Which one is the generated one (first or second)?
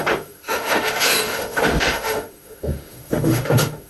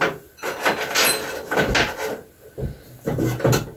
first